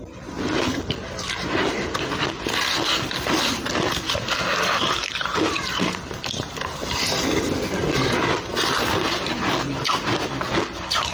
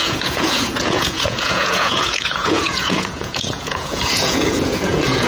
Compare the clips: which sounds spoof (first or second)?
second